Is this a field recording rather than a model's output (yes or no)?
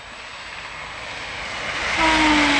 yes